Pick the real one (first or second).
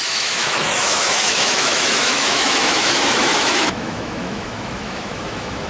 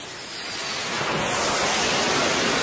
second